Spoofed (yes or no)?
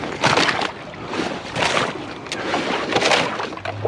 no